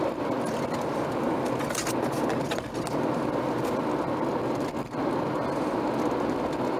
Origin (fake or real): real